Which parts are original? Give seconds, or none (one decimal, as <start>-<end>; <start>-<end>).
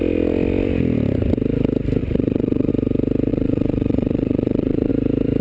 0.0-2.0; 2.7-3.3; 4.9-5.4